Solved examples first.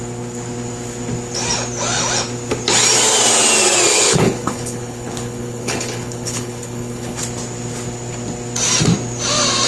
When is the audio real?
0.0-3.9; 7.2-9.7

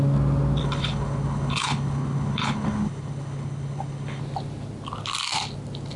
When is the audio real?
0.0-0.6; 4.2-6.0